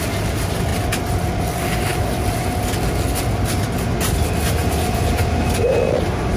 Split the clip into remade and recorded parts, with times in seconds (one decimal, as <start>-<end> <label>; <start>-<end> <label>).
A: 0.0-4.6 recorded; 4.6-6.4 remade

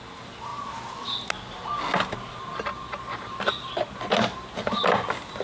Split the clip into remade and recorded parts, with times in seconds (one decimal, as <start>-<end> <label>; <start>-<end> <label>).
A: 0.0-5.4 recorded

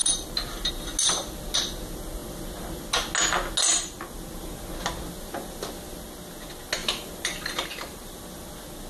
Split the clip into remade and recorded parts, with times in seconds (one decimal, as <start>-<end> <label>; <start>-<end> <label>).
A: 0.0-0.7 remade; 0.7-6.8 recorded; 6.8-8.2 remade; 8.2-8.9 recorded

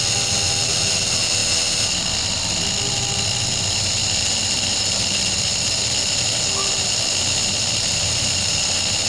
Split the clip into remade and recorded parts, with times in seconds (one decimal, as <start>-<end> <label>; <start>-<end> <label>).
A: 0.0-9.1 recorded

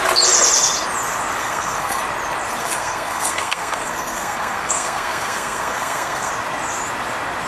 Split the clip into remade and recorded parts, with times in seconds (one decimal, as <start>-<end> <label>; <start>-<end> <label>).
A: 0.0-1.4 recorded; 1.4-2.0 remade; 2.0-2.6 recorded; 2.6-6.3 remade; 6.3-7.5 recorded